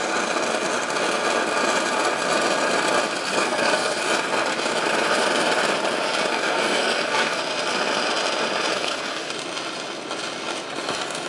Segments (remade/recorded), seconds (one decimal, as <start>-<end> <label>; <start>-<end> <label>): 0.0-3.3 recorded; 3.3-4.0 remade; 4.0-6.3 recorded; 6.3-7.4 remade; 7.4-8.7 recorded; 8.7-9.3 remade; 9.3-11.3 recorded